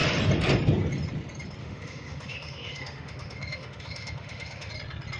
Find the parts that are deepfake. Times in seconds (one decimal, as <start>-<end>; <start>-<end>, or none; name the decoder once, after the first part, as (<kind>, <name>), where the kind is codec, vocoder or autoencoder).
1.6-4.7 (autoencoder, DAC-VAE)